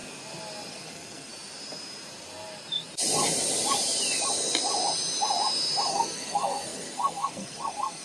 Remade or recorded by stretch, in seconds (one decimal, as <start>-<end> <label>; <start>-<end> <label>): 0.0-0.7 recorded; 0.7-1.3 remade; 1.3-5.9 recorded; 5.9-8.0 remade